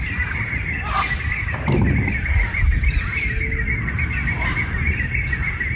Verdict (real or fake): real